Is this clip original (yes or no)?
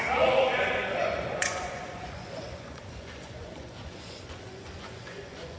no